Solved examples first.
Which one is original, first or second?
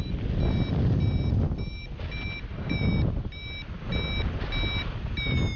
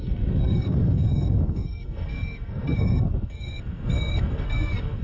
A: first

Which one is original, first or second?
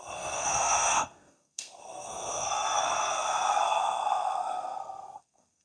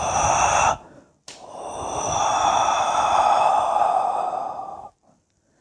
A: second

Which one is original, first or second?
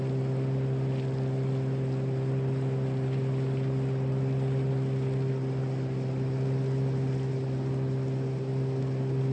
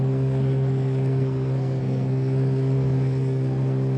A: first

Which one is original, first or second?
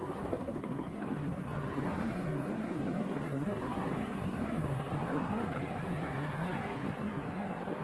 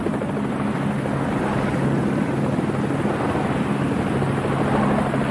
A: second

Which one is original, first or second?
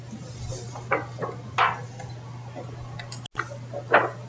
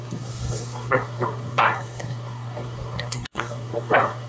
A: first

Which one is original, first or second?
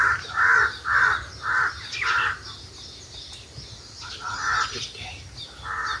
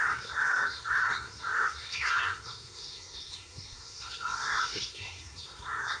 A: first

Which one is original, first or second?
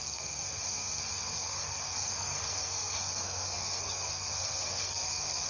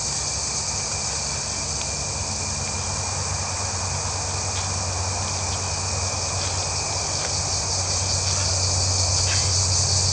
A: second